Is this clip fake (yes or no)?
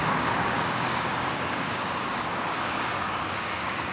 yes